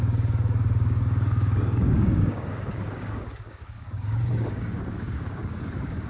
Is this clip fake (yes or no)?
yes